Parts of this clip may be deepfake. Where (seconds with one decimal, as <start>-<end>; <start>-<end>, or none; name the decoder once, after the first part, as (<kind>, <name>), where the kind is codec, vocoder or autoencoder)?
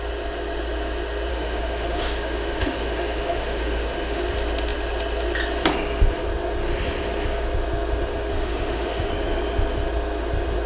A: 1.3-4.2 (autoencoder, DAC-VAE); 8.3-9.1